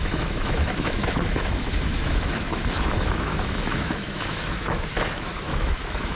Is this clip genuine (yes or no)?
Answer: no